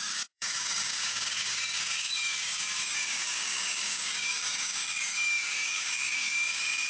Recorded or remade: remade